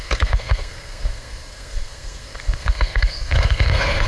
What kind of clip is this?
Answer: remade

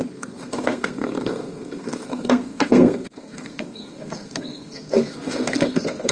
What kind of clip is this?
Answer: remade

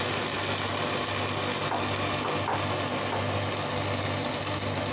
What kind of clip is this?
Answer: recorded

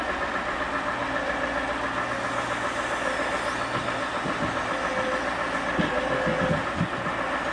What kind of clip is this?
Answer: recorded